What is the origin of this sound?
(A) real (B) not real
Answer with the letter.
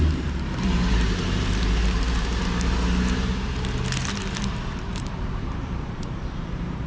B